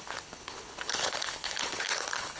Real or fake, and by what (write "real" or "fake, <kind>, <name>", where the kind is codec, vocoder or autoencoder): fake, codec, HILCodec